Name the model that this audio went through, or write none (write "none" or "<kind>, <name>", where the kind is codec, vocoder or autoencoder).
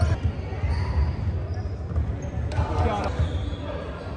none